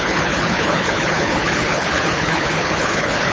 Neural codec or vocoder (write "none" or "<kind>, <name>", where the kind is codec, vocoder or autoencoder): codec, HILCodec